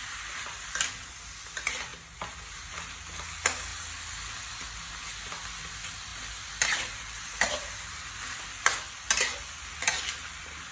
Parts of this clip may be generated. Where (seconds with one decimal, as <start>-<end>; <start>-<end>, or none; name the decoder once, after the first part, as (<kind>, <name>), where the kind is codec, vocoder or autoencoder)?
none